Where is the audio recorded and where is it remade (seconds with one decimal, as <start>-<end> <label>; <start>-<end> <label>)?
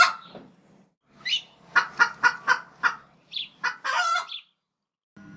0.0-5.4 recorded